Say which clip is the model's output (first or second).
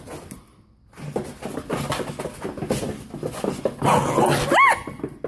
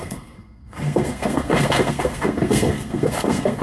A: second